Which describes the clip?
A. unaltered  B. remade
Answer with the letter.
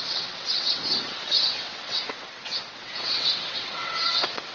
B